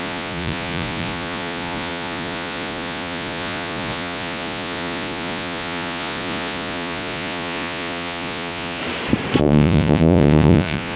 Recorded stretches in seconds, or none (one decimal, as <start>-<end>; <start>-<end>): 8.8-9.4